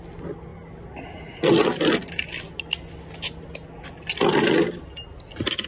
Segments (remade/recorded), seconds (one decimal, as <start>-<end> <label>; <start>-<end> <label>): 0.0-5.7 recorded